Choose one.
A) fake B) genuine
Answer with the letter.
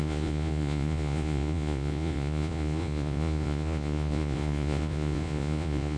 A